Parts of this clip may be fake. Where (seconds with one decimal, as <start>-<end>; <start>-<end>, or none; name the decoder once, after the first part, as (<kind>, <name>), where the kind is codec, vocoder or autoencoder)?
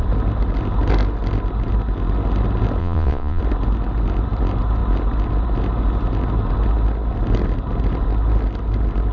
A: 2.8-3.4 (vocoder, Vocos)